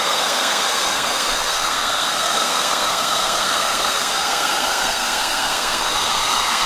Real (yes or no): no